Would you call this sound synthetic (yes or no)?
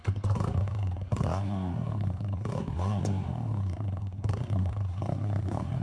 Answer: yes